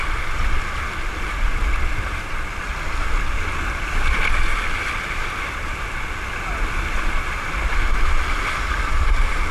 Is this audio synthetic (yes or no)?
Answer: no